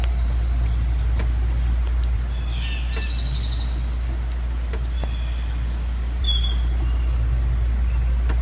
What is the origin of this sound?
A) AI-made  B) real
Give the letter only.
B